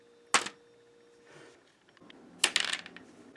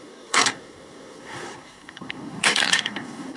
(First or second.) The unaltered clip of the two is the first